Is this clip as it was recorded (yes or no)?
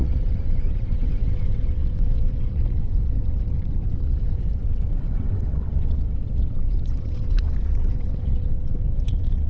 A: no